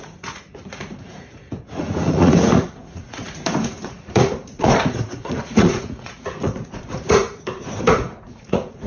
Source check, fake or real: fake